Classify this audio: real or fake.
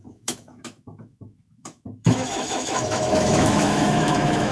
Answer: fake